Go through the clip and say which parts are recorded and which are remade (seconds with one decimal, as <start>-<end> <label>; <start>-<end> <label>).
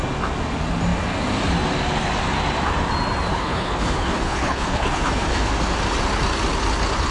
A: 0.0-3.3 recorded; 3.3-5.5 remade; 5.5-7.1 recorded